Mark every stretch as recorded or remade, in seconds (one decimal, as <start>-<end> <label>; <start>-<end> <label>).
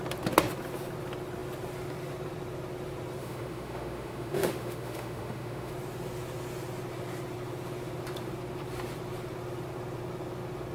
0.0-3.2 recorded; 3.2-5.7 remade; 5.7-10.7 recorded